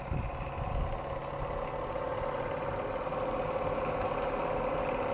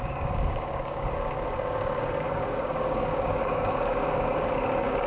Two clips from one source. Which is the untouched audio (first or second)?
first